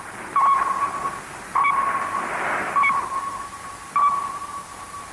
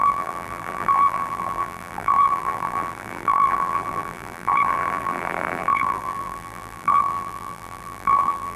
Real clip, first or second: first